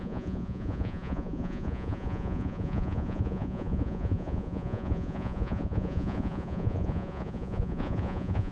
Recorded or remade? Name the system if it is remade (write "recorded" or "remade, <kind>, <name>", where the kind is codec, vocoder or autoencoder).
remade, vocoder, Vocos